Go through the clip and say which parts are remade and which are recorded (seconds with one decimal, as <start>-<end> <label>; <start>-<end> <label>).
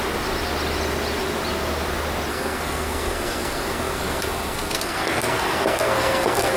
0.0-2.3 recorded; 2.3-6.6 remade